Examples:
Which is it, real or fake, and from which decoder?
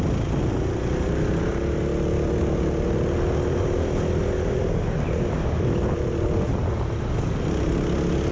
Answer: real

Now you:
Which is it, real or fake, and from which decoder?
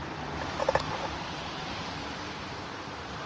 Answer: fake, vocoder, BigVGAN v2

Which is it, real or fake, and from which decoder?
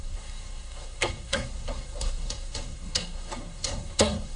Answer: fake, codec, SNAC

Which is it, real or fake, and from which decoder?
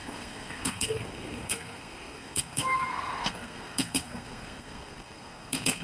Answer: fake, codec, SNAC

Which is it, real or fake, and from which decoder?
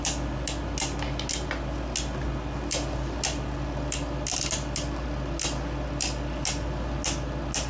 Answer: real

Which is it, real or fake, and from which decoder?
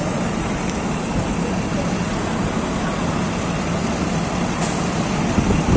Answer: real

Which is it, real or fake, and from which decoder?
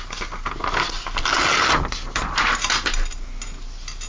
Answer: real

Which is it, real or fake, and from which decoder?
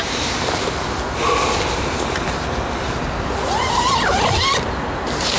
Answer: real